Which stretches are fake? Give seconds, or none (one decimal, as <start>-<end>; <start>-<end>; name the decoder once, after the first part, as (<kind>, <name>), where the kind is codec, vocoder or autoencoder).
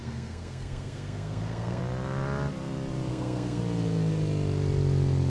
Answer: 0.0-1.8 (codec, SNAC); 3.1-3.6